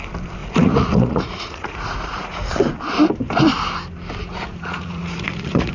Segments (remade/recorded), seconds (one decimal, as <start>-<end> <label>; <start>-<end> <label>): 0.0-0.4 recorded; 0.4-2.5 remade; 2.5-4.3 recorded; 4.3-5.7 remade